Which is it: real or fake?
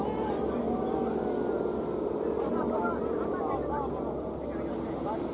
real